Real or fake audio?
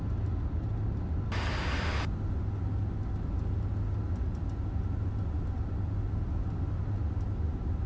real